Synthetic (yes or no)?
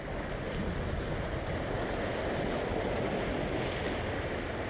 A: no